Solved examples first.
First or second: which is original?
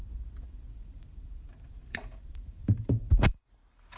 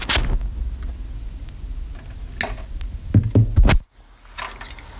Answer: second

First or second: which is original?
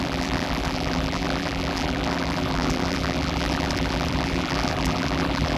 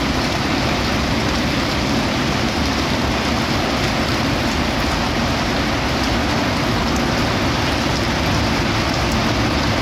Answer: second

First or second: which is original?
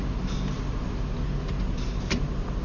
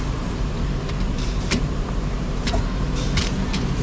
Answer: first